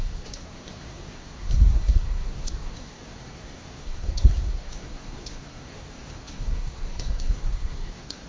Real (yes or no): no